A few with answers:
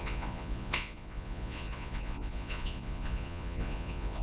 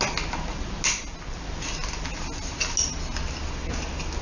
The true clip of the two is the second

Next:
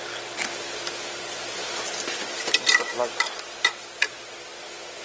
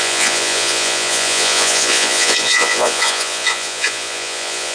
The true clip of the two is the first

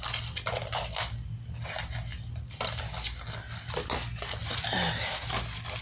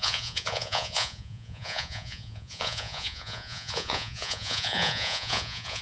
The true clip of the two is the first